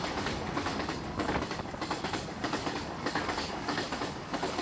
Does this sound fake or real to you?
fake